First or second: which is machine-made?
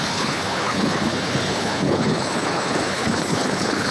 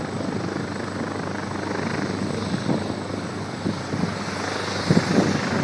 first